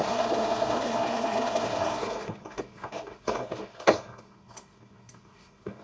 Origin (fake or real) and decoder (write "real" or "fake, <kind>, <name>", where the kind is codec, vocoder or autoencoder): fake, codec, SNAC